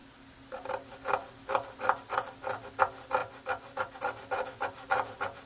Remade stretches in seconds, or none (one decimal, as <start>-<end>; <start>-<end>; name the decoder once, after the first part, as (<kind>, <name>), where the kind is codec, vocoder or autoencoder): none